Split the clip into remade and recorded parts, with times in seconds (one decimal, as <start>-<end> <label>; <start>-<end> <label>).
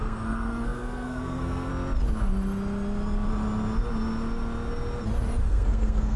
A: 0.0-1.7 remade; 1.7-5.4 recorded; 5.4-6.2 remade